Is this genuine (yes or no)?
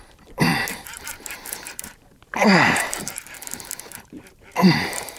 no